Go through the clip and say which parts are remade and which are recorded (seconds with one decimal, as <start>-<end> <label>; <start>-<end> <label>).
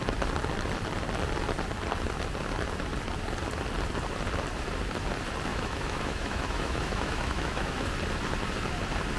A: 0.0-5.5 recorded; 5.5-7.9 remade; 7.9-9.2 recorded